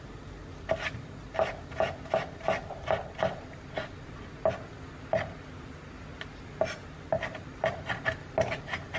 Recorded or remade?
recorded